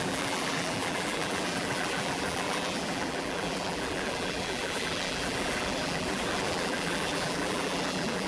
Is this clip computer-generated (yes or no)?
yes